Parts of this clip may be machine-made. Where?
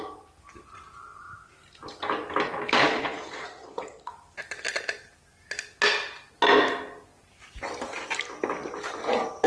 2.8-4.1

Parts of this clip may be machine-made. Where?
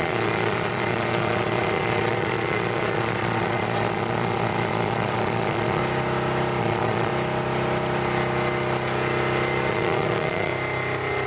0.0-5.8; 6.6-7.1; 9.7-10.5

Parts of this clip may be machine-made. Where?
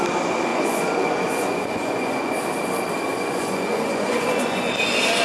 0.5-2.3; 3.1-4.7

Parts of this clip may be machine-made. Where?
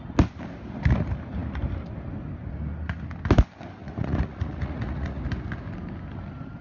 3.8-5.2